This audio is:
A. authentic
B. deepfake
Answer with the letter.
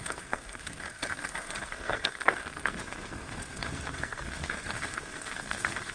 B